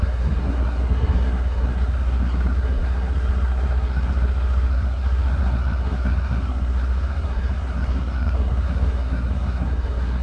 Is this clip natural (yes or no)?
no